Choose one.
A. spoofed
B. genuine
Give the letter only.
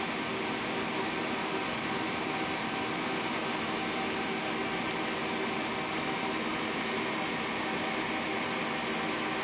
B